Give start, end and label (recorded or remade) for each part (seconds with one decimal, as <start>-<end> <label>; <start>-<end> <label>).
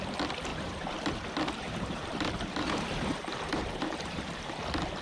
0.0-0.5 recorded; 0.5-1.1 remade; 1.1-1.6 recorded; 1.6-4.6 remade; 4.6-5.0 recorded